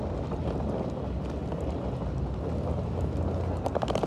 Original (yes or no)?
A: yes